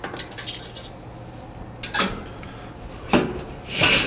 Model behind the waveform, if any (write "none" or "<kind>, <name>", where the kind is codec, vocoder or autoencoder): none